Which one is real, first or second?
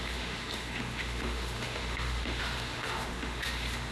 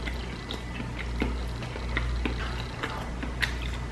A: second